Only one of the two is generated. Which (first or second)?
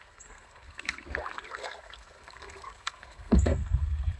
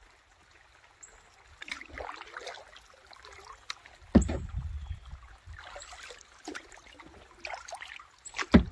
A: first